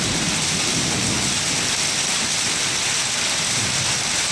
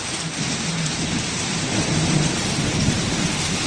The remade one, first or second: second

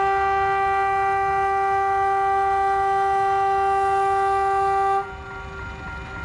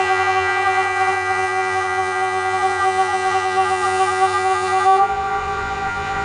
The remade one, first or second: second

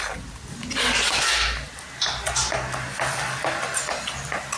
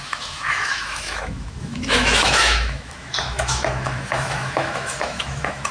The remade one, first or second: second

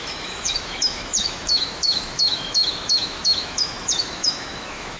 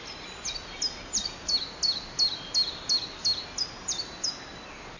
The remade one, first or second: first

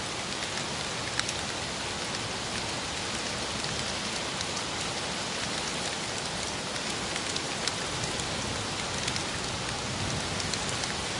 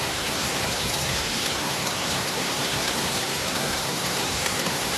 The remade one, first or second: second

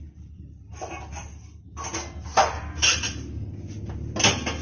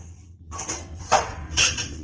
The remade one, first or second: second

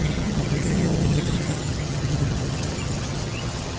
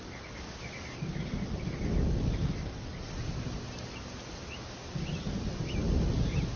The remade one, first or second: first